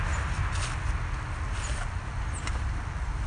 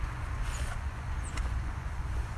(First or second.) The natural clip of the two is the first